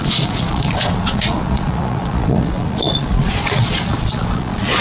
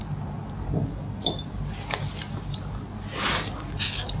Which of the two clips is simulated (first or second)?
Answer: first